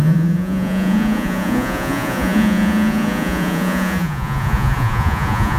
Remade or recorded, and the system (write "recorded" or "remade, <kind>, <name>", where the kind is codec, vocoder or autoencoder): remade, vocoder, Vocos